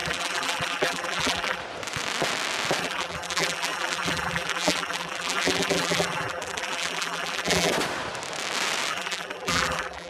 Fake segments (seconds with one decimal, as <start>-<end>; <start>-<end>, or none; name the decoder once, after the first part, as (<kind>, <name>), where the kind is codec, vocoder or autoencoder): 0.0-1.6 (vocoder, BigVGAN v2); 2.8-7.7; 8.9-10.1